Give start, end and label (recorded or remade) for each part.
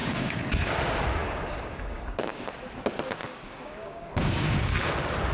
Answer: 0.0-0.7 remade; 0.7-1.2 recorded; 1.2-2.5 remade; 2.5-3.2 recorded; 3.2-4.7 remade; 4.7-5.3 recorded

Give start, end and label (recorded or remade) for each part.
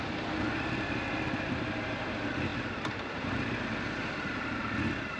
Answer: 0.0-5.2 recorded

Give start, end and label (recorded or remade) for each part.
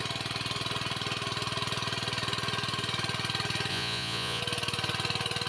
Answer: 0.0-3.7 recorded; 3.7-4.4 remade; 4.4-5.5 recorded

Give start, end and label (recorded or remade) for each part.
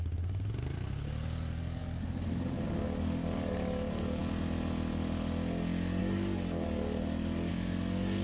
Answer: 0.0-1.8 recorded; 1.8-4.2 remade; 4.2-6.0 recorded; 6.0-7.5 remade; 7.5-8.2 recorded